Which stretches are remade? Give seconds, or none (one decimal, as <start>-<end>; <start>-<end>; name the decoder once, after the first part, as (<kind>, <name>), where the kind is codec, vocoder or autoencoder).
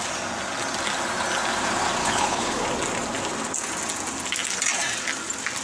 2.0-2.6 (codec, HILCodec)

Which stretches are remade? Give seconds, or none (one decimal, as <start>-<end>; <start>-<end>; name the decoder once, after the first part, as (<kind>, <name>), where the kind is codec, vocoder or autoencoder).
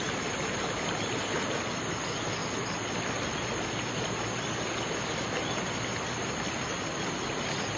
none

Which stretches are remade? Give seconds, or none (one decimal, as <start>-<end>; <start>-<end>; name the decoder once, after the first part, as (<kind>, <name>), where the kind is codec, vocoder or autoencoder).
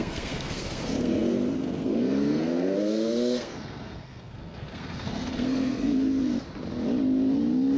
0.0-6.3 (codec, SNAC)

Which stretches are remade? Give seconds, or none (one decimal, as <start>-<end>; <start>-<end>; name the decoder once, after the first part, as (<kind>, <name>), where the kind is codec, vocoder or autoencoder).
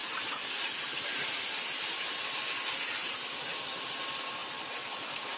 none